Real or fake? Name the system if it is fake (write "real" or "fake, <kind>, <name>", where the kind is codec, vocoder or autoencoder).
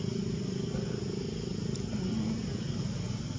real